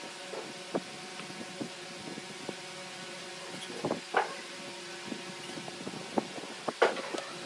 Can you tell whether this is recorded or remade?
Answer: recorded